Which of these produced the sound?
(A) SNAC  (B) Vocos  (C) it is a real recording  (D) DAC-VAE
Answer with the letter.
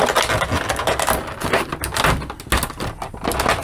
C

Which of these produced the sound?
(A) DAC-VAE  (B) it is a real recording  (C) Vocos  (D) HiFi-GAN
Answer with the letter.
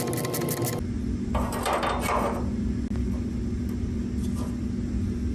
B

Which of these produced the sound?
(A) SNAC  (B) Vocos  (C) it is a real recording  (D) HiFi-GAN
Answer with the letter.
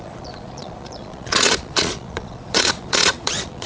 B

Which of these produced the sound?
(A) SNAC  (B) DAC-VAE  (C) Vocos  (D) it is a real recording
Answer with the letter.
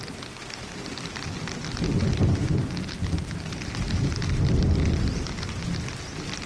D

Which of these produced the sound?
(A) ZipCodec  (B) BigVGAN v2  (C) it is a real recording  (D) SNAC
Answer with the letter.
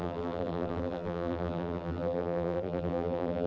B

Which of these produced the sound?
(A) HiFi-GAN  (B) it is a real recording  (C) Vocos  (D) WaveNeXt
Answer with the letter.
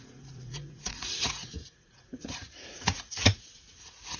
C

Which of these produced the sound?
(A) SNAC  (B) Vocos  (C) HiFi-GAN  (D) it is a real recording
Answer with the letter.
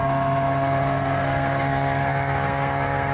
A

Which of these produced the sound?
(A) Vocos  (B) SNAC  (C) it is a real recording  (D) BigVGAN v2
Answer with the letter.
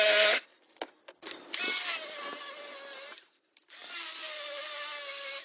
C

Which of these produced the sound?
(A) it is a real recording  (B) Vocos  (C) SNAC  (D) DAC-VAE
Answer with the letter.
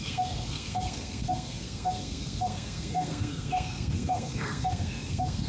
C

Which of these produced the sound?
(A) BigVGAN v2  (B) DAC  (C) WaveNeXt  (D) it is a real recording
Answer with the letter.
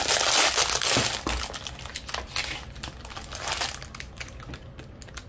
D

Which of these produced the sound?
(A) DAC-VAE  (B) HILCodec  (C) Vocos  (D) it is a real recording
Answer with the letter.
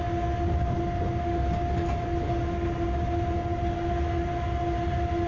D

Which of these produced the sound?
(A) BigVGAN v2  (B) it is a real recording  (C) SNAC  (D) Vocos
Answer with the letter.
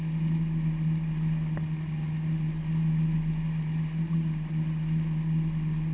B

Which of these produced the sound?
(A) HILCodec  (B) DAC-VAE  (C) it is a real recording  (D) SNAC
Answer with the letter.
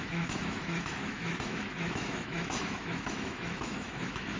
B